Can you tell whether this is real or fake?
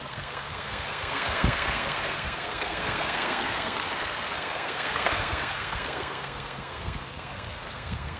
fake